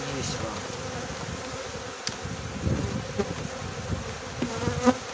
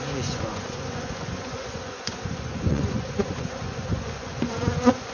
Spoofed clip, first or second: second